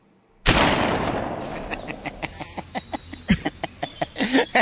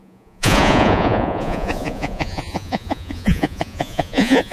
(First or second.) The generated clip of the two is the second